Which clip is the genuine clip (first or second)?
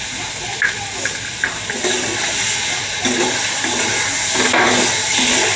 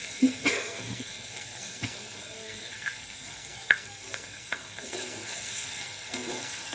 first